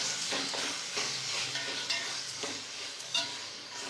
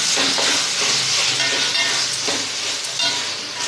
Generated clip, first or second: first